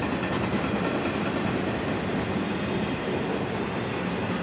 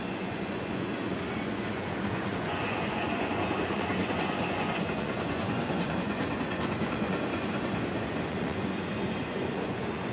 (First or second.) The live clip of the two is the first